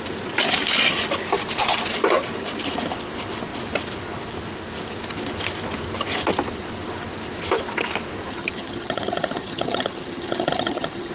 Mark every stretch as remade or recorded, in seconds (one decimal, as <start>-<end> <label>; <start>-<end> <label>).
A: 0.0-8.3 recorded; 8.3-11.1 remade